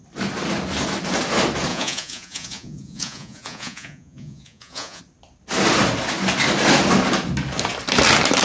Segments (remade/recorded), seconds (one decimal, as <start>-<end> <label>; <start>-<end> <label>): 0.0-1.7 recorded; 1.7-5.0 remade; 5.0-8.4 recorded